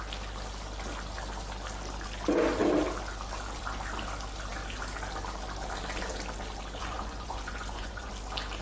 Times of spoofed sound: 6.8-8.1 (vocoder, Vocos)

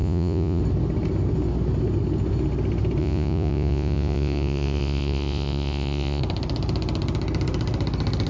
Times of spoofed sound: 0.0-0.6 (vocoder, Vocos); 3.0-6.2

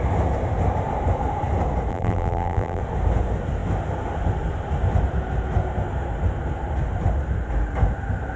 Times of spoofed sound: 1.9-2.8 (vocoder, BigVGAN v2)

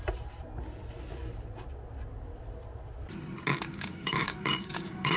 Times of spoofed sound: 3.5-5.2 (codec, DAC)

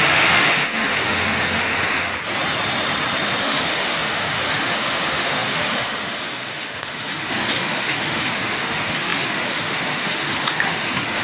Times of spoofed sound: 0.0-2.1 (autoencoder, DAC-VAE); 3.4-11.2

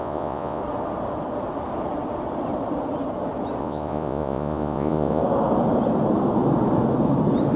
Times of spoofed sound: 0.0-0.6 (vocoder, Vocos); 3.6-5.2

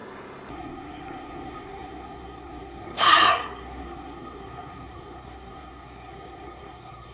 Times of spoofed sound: 0.5-7.1 (codec, SNAC)

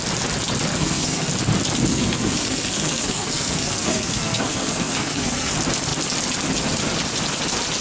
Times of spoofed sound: 0.8-1.3 (codec, SNAC); 1.9-5.5